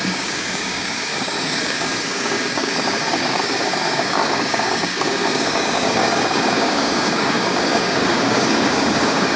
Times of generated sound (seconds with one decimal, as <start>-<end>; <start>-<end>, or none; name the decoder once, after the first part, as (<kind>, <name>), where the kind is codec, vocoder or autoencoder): 0.0-9.4 (codec, DAC)